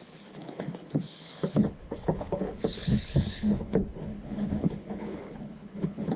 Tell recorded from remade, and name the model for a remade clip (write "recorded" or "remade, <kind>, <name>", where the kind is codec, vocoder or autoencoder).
remade, codec, HILCodec